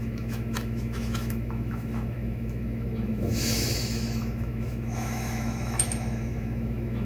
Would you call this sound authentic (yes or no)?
no